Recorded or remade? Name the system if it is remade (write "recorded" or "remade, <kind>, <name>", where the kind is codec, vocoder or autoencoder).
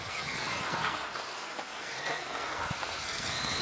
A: remade, codec, SNAC